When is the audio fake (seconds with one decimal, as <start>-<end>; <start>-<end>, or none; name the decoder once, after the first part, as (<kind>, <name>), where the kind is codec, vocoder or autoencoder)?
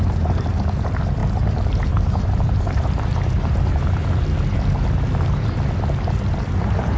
0.0-4.3 (vocoder, BigVGAN v2); 6.6-7.0